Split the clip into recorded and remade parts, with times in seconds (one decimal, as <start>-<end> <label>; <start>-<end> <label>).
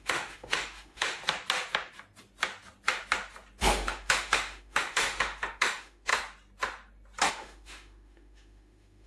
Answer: 0.0-1.2 remade; 1.2-3.6 recorded; 3.6-6.1 remade; 6.1-7.3 recorded; 7.3-9.1 remade